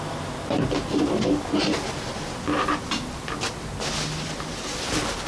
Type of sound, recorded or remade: recorded